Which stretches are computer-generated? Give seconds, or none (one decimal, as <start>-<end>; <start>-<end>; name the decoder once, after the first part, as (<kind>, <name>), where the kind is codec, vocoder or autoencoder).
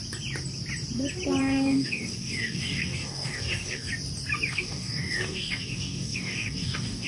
1.4-3.9 (codec, DAC); 4.5-7.1